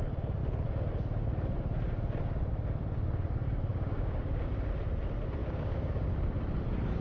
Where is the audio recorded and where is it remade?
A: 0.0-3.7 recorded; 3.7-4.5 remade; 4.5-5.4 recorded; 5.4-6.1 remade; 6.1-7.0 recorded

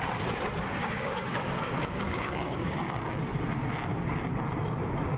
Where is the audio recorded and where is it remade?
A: 0.0-0.8 recorded; 0.8-3.2 remade; 3.2-5.2 recorded

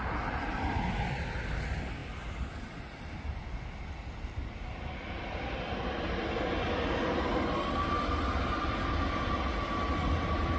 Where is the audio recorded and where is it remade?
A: 0.0-10.6 recorded

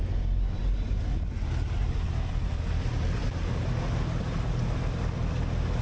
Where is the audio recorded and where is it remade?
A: 0.0-5.8 recorded

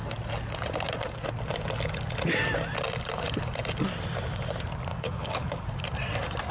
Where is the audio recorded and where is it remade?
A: 0.0-4.9 recorded; 4.9-5.6 remade; 5.6-6.5 recorded

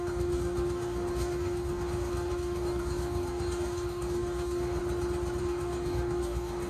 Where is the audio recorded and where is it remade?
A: 0.0-4.8 remade; 4.8-5.4 recorded; 5.4-6.7 remade